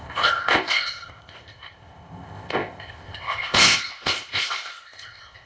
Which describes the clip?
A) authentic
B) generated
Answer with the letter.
B